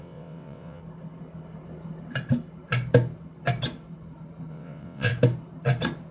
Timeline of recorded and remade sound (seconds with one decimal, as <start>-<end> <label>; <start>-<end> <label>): 0.0-0.8 remade; 0.8-4.5 recorded; 4.5-5.1 remade; 5.1-6.1 recorded